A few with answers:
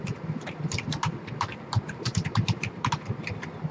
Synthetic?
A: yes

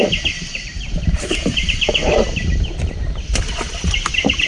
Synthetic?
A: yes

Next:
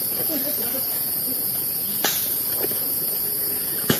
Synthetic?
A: yes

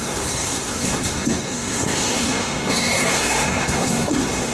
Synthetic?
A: yes